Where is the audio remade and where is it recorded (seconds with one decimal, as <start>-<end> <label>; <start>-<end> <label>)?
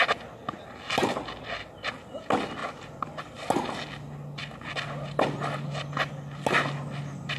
0.0-2.6 recorded; 2.6-3.2 remade; 3.2-7.4 recorded